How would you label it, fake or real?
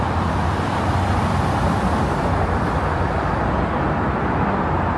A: real